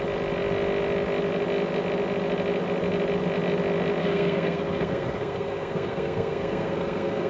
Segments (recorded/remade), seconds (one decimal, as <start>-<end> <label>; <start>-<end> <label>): 0.0-4.0 recorded; 4.0-7.3 remade